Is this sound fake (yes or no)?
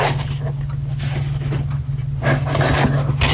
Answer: no